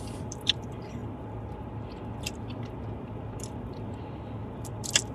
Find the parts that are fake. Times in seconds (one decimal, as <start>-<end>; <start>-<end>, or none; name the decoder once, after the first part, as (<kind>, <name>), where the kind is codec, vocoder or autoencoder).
0.0-1.0 (vocoder, BigVGAN v2); 2.9-5.1